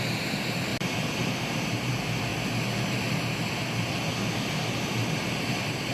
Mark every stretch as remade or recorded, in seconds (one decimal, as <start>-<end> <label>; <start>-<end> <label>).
0.0-5.9 recorded